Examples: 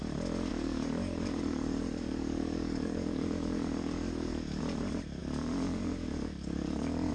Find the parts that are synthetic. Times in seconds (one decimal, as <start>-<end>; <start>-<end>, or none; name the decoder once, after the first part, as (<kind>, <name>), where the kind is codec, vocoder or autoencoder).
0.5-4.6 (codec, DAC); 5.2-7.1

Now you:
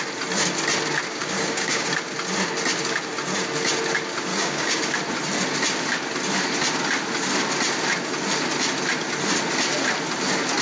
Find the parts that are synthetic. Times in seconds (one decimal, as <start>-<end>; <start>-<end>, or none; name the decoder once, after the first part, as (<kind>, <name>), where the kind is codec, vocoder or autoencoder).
1.1-1.9 (codec, DAC); 4.3-4.8

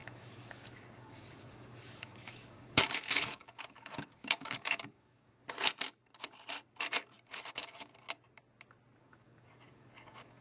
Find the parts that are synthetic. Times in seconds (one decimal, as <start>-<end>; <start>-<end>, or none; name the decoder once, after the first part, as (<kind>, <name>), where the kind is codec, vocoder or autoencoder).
0.0-5.4 (codec, DAC); 7.5-7.9; 9.0-10.4

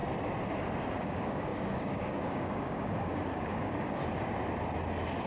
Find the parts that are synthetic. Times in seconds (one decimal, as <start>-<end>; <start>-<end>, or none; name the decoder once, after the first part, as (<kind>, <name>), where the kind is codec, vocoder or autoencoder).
1.0-4.0 (codec, DAC)

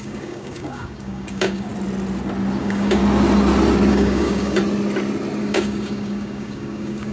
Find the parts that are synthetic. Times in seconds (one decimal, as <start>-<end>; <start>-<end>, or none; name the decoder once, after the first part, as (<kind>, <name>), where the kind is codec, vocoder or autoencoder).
0.0-1.7 (codec, DAC); 2.6-3.0; 3.9-4.6; 5.4-7.1

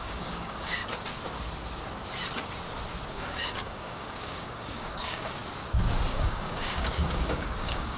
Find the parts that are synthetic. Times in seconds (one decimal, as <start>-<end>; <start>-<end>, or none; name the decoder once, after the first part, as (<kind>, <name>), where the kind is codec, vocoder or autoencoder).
0.0-0.8 (codec, DAC); 3.1-5.4; 6.1-8.0

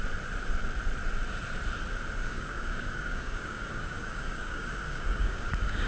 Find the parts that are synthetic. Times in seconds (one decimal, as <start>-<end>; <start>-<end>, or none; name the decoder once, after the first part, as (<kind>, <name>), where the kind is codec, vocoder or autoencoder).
2.2-5.9 (codec, DAC)